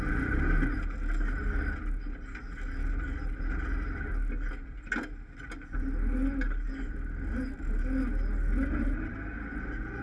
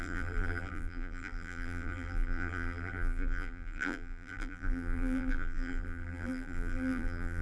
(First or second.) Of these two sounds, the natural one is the first